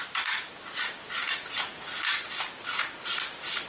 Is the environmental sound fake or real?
real